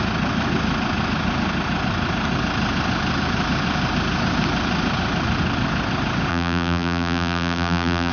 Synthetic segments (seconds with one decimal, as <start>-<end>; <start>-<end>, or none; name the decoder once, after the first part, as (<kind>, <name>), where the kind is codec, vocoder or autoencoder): 6.3-8.1 (vocoder, BigVGAN v2)